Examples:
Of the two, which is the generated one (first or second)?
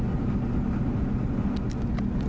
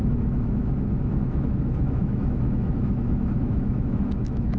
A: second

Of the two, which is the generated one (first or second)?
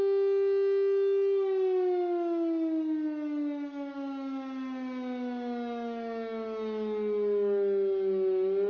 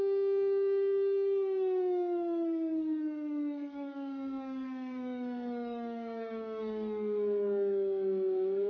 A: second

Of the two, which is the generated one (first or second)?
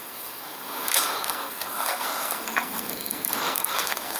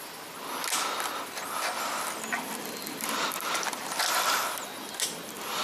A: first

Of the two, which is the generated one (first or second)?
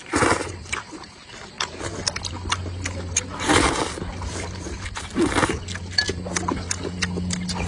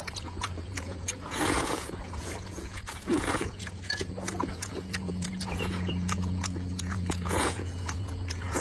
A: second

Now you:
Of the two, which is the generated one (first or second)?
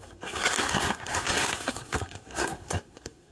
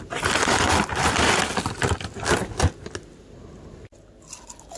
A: first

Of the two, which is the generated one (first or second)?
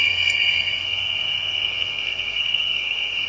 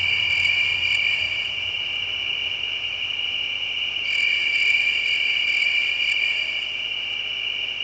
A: first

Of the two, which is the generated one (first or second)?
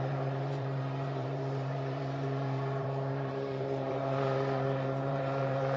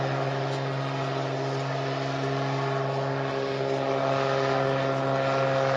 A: first